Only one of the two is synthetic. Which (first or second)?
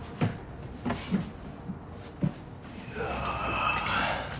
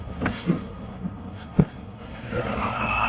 second